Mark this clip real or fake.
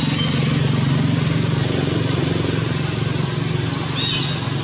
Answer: real